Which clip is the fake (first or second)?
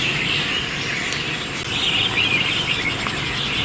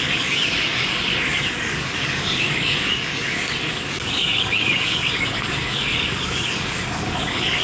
second